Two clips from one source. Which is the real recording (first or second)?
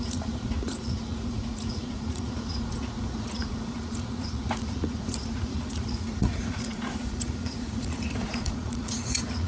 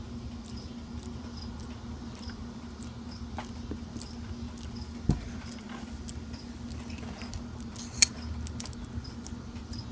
second